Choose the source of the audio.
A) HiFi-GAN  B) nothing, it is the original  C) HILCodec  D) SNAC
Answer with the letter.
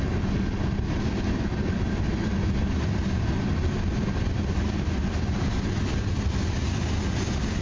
B